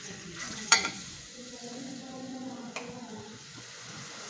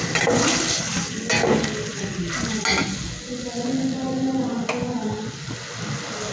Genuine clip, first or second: second